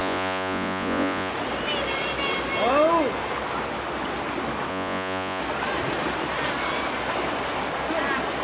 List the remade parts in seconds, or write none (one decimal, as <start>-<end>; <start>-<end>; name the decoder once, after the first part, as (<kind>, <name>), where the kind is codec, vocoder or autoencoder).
0.0-1.3 (vocoder, Vocos); 4.7-5.4